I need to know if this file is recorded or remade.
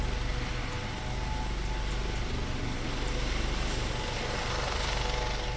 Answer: recorded